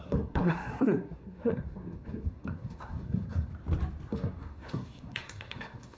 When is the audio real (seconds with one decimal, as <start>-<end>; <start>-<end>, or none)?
3.5-4.1